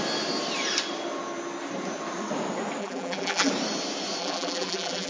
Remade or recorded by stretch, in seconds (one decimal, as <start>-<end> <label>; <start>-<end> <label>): 0.0-2.8 recorded; 2.8-3.5 remade; 3.5-4.2 recorded; 4.2-5.1 remade